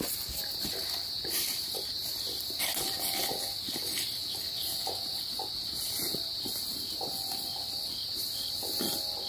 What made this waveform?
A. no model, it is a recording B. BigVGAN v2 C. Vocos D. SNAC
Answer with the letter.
A